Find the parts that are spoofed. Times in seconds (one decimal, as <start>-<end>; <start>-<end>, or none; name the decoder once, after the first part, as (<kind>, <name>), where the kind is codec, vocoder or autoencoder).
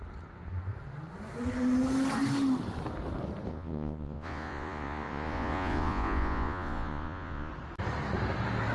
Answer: 3.5-7.5 (vocoder, Vocos)